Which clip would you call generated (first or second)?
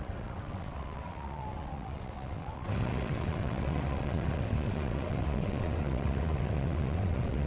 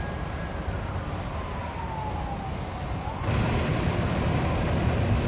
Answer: first